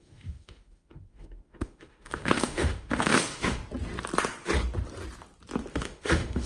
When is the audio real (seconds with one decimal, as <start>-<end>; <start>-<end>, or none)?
3.6-5.7